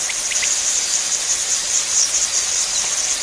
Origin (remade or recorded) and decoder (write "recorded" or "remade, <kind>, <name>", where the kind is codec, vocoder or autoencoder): remade, vocoder, BigVGAN v2